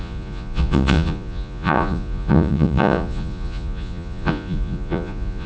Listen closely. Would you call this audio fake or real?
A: fake